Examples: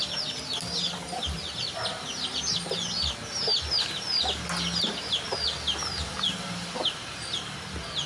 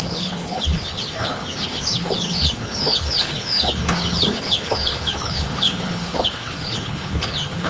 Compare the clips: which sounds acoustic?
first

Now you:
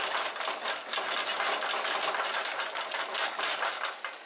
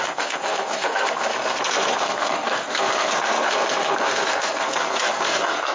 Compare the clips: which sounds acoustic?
first